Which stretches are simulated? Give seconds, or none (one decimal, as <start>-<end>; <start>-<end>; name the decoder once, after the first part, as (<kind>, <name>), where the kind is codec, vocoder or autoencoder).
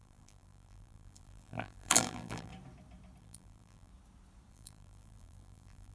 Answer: 0.0-2.5 (vocoder, BigVGAN v2); 3.2-3.9; 4.5-5.9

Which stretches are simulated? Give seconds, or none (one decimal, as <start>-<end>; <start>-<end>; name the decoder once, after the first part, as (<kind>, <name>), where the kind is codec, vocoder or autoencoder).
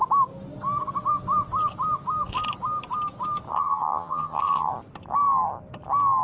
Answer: 3.5-4.7 (vocoder, HiFi-GAN)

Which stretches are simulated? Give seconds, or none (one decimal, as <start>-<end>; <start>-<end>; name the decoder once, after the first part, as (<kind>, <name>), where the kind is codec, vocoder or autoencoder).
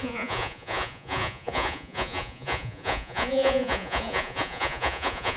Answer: 0.0-5.4 (vocoder, Vocos)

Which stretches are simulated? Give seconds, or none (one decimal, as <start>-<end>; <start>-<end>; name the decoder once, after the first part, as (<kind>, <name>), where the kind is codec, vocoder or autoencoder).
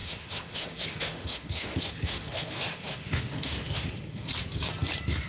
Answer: 0.0-4.3 (autoencoder, DAC-VAE)